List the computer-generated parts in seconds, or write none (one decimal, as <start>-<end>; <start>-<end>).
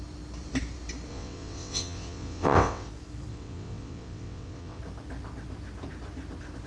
1.1-2.9; 3.3-4.8